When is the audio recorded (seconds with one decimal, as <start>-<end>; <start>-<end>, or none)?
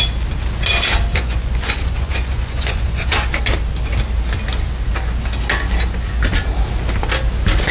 0.0-1.1; 3.4-7.7